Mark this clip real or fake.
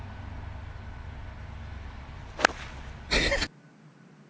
real